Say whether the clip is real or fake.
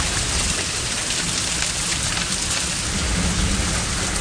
real